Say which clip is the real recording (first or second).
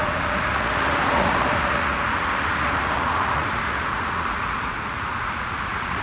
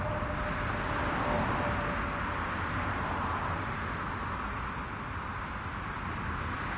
second